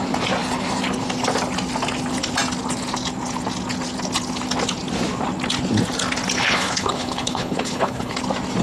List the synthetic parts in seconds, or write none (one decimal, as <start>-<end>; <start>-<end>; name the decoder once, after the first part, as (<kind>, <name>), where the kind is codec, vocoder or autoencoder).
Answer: 6.4-8.2 (codec, HILCodec)